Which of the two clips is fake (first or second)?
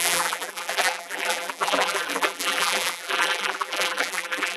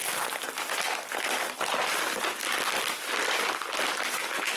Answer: first